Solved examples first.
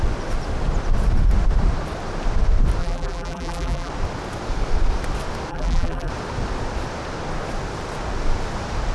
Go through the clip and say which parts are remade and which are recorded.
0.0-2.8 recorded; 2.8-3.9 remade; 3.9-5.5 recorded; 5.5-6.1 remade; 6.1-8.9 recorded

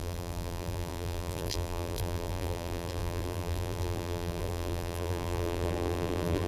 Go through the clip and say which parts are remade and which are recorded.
0.0-6.5 remade

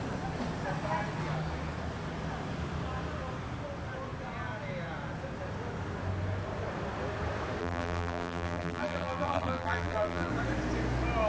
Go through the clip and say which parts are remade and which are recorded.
0.0-7.6 recorded; 7.6-10.3 remade; 10.3-11.3 recorded

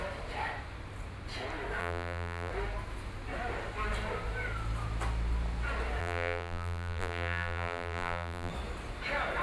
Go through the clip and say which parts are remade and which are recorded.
0.0-1.8 recorded; 1.8-2.5 remade; 2.5-6.0 recorded; 6.0-8.5 remade; 8.5-9.4 recorded

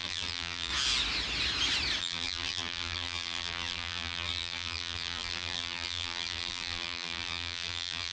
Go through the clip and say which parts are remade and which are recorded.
0.0-0.7 remade; 0.7-2.0 recorded; 2.0-8.1 remade

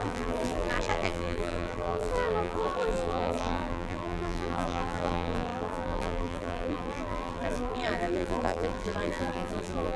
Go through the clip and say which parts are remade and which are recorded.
0.0-10.0 remade